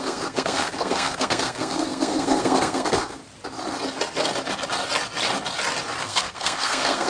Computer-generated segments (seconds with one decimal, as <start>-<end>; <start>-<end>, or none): 0.0-3.2; 6.0-7.1